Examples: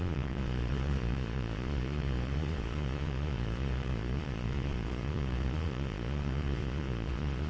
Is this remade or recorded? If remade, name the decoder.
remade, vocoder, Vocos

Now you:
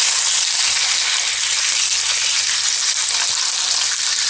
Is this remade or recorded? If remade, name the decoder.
recorded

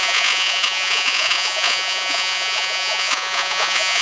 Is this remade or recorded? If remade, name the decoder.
remade, vocoder, Vocos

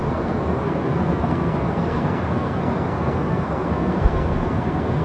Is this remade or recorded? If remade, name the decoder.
remade, codec, SNAC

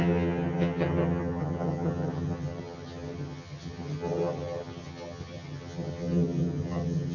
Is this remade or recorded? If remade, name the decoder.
remade, vocoder, HiFi-GAN